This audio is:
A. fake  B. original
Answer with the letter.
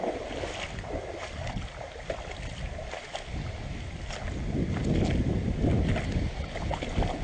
B